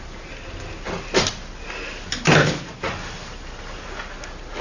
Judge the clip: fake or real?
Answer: real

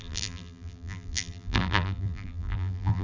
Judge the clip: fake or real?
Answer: fake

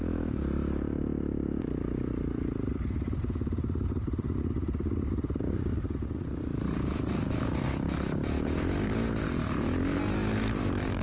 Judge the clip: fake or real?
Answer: real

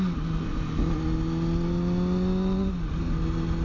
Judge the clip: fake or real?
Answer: real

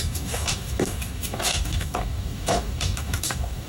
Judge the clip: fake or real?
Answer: fake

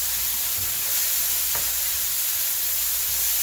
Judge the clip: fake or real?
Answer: real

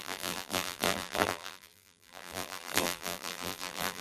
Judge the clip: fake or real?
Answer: fake